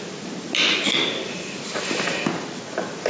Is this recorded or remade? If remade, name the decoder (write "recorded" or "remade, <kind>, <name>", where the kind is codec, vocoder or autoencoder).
recorded